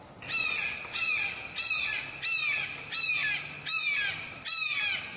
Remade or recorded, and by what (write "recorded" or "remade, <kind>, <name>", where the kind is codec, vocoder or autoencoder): recorded